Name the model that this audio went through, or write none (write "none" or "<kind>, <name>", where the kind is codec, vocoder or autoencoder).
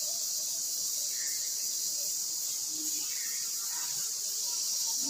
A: none